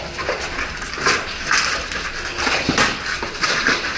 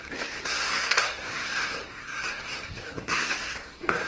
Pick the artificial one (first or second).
second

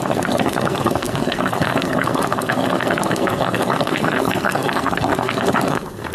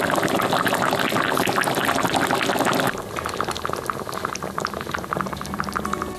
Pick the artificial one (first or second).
first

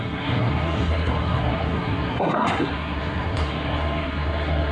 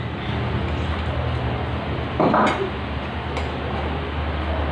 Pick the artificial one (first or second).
first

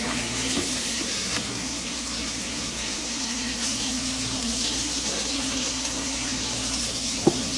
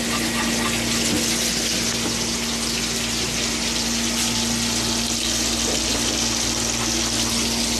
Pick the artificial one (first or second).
first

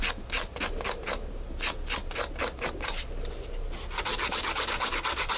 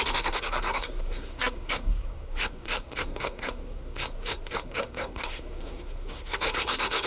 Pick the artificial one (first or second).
second